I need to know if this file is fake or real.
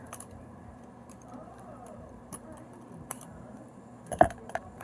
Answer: fake